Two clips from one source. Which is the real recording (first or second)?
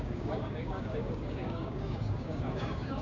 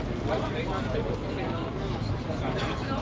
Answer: second